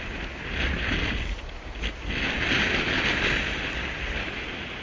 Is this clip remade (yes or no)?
no